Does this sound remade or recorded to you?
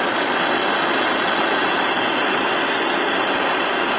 recorded